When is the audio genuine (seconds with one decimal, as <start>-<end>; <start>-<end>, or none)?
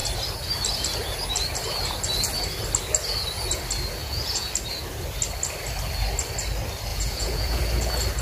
0.0-4.0; 4.5-6.9; 7.6-8.2